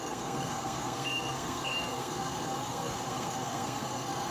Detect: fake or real fake